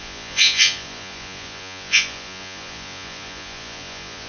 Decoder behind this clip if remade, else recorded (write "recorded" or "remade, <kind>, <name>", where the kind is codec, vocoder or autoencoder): remade, vocoder, Vocos